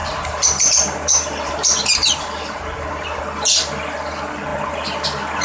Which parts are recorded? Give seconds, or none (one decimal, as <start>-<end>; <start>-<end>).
3.2-5.4